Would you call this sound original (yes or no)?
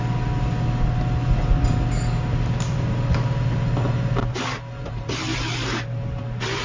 yes